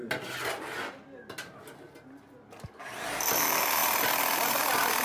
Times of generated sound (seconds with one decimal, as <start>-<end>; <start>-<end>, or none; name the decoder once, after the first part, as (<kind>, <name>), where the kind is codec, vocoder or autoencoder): none